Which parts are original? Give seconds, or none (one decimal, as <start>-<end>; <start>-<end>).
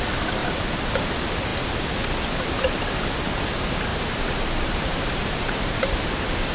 0.0-0.4; 1.1-3.9; 6.1-6.5